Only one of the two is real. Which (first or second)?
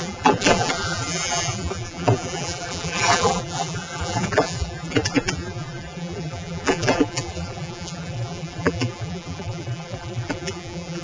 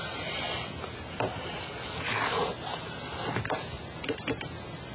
second